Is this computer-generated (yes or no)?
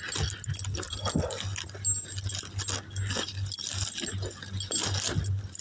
no